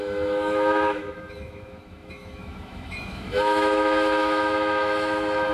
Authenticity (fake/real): fake